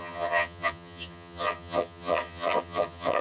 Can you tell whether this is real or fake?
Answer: fake